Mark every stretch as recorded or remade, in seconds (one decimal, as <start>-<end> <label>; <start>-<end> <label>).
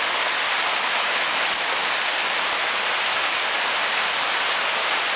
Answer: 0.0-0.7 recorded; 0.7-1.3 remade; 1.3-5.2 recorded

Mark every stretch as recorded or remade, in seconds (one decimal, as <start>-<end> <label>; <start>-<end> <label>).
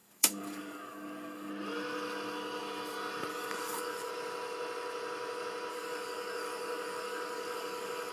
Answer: 0.0-1.5 remade; 1.5-3.3 recorded; 3.3-4.1 remade; 4.1-5.7 recorded; 5.7-8.1 remade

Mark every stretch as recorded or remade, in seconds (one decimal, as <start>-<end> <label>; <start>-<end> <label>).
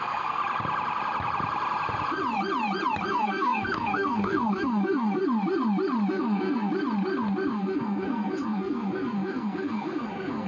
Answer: 0.0-0.4 remade; 0.4-3.1 recorded; 3.1-5.2 remade; 5.2-6.1 recorded; 6.1-6.7 remade; 6.7-7.5 recorded; 7.5-10.5 remade